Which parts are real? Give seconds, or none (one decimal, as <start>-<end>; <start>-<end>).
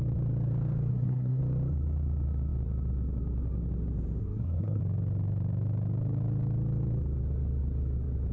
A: 0.0-0.9; 1.4-4.2; 4.8-8.3